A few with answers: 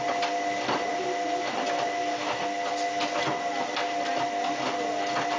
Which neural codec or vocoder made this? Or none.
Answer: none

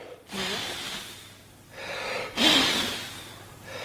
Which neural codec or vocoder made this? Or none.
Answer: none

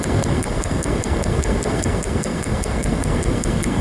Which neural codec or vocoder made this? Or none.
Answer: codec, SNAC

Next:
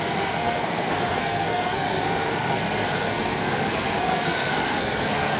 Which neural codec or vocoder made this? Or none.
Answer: codec, SNAC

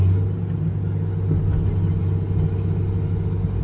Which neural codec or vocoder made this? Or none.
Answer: none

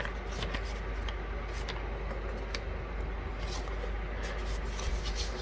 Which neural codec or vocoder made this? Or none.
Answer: none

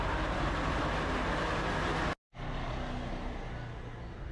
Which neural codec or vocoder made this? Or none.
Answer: none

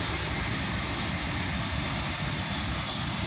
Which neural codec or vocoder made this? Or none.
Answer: none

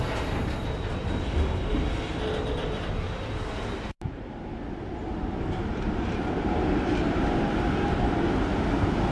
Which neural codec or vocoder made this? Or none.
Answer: none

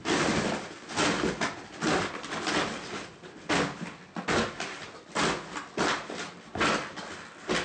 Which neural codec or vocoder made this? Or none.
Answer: none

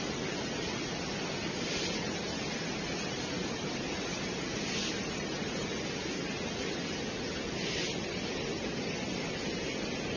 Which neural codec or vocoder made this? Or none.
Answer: none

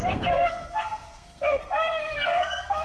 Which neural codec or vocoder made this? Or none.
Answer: codec, SNAC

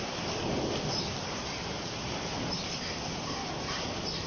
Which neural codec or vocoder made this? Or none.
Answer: none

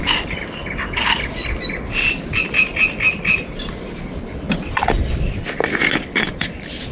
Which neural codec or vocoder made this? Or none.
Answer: none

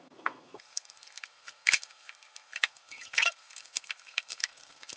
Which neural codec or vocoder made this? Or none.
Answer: codec, SNAC